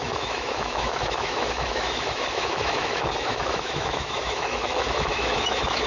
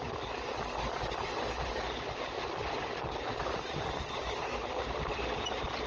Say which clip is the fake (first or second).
first